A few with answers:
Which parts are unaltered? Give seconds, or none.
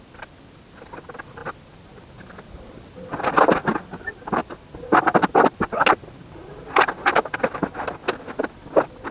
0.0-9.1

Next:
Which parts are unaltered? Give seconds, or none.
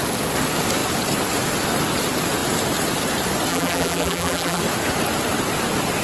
0.0-3.5; 4.6-6.0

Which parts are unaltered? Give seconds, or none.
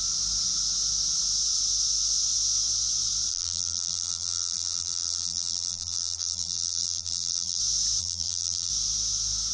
0.0-3.3; 7.6-8.0; 8.7-9.5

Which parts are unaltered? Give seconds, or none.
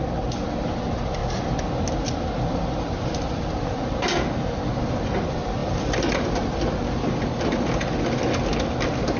0.0-5.6; 6.7-9.2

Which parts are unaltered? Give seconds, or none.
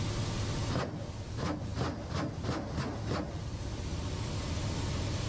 0.0-5.3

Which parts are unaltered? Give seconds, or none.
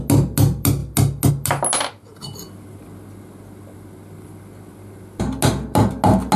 0.0-6.4